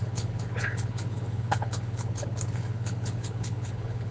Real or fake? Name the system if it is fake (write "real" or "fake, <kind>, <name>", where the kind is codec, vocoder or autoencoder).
fake, codec, HILCodec